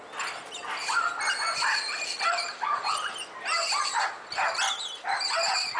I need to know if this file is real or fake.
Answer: real